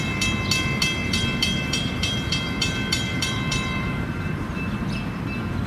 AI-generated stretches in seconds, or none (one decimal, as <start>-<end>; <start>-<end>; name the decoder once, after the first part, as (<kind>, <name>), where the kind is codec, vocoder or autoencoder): 1.0-4.4 (vocoder, BigVGAN v2)

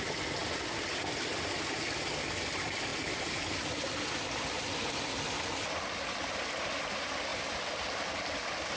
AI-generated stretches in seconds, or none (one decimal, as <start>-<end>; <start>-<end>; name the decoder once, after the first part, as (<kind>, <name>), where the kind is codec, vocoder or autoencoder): none

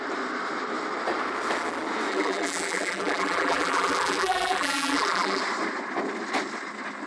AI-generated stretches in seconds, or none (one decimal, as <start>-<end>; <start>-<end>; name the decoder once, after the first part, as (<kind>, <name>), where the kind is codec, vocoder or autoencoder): 2.1-5.4 (vocoder, BigVGAN v2)